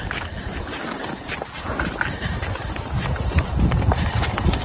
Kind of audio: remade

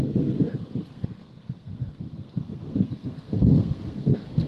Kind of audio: remade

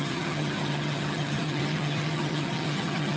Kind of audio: remade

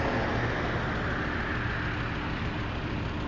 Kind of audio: recorded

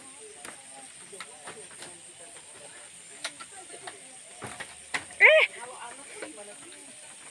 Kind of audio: recorded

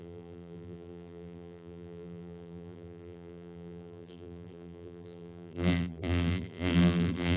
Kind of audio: remade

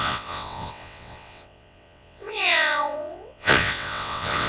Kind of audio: remade